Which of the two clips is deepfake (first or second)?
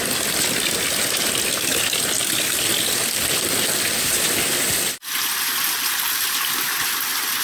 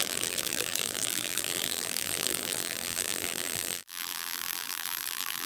second